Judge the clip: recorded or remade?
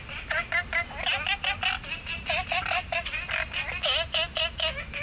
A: recorded